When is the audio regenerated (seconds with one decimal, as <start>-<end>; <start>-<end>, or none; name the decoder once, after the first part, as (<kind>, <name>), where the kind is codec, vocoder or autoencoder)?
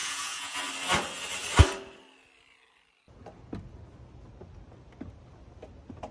0.0-0.6 (vocoder, Vocos)